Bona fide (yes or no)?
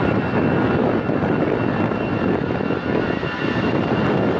yes